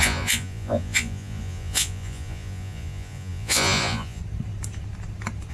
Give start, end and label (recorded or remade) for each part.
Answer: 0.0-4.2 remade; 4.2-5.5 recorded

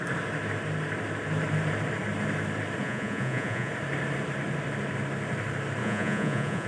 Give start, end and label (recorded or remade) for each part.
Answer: 0.0-2.8 recorded; 2.8-3.7 remade; 3.7-5.8 recorded; 5.8-6.7 remade

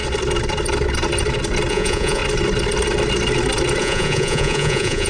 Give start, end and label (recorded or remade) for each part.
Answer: 0.0-1.7 recorded; 1.7-2.2 remade; 2.2-3.8 recorded; 3.8-5.1 remade